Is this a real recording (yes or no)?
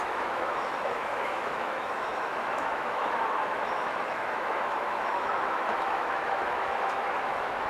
no